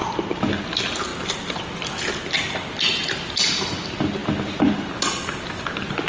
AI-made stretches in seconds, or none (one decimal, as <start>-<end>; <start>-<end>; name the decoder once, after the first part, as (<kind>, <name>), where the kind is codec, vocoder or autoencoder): none